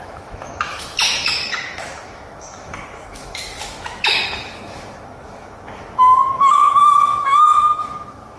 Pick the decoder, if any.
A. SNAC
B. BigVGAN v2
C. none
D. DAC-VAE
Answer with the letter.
D